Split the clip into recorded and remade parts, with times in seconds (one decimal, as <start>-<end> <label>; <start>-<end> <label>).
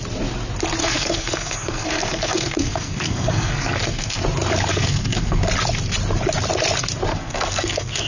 0.0-0.8 recorded; 0.8-4.2 remade; 4.2-4.7 recorded; 4.7-5.4 remade; 5.4-7.1 recorded; 7.1-8.1 remade